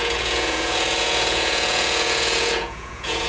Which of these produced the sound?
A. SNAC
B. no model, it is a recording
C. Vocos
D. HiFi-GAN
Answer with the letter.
C